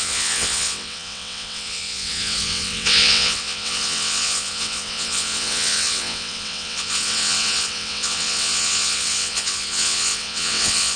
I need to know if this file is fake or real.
fake